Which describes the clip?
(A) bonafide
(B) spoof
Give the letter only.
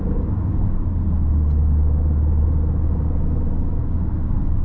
A